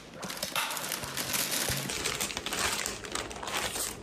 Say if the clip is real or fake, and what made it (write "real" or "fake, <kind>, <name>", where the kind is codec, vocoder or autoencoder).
real